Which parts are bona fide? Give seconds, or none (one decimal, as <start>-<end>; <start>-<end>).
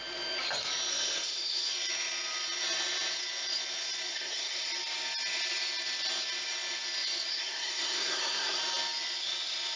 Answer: 0.0-0.9; 1.7-4.1; 4.7-7.3; 8.6-9.8